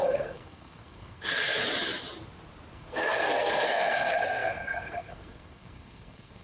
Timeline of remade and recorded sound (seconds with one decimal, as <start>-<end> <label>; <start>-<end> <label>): 0.0-1.6 remade; 1.6-2.7 recorded; 2.7-6.4 remade